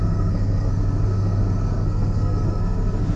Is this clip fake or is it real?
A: fake